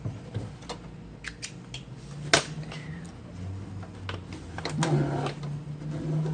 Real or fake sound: real